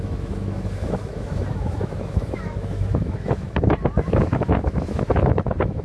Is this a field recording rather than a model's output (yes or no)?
no